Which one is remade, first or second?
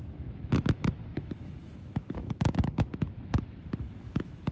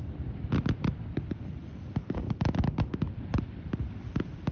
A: first